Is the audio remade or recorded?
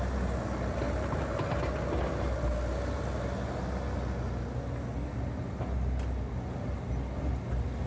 recorded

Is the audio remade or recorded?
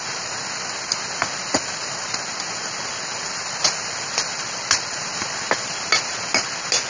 recorded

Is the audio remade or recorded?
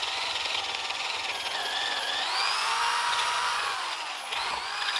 remade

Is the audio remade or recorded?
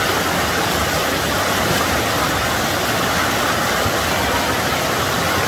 recorded